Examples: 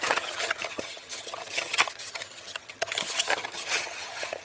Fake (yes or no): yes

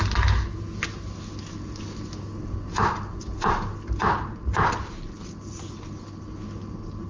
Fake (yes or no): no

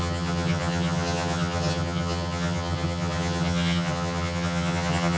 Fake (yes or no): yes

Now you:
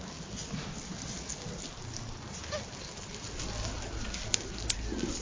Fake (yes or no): no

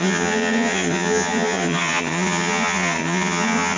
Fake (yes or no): yes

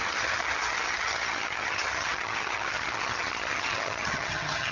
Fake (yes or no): yes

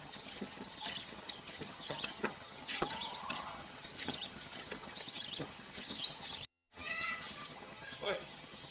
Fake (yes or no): yes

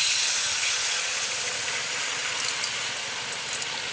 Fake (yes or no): no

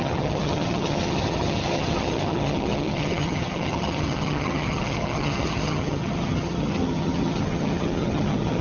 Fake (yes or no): yes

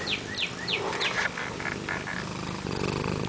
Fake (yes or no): no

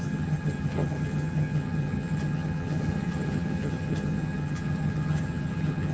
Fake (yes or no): yes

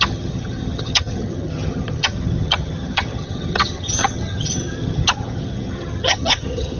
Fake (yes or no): yes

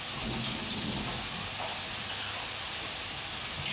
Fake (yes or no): no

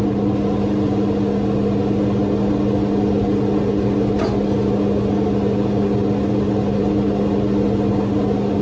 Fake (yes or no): no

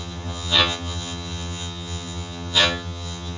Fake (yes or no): yes